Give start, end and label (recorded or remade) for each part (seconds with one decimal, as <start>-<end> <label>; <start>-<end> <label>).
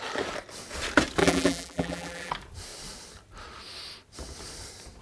0.0-1.2 recorded; 1.2-2.3 remade; 2.3-5.0 recorded